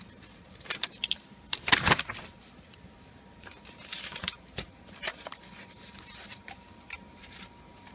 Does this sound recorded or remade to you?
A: remade